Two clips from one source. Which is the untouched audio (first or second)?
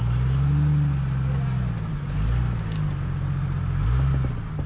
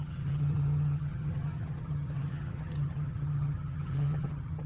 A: first